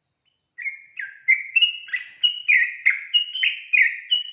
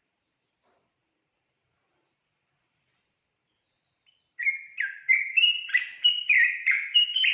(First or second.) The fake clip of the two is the second